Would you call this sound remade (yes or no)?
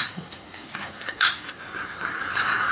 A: yes